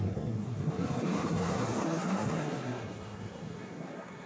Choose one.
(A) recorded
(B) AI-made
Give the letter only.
B